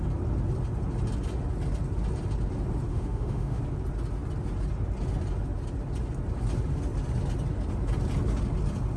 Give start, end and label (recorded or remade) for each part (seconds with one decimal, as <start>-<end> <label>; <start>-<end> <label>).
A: 0.0-2.9 recorded; 2.9-3.6 remade; 3.6-9.0 recorded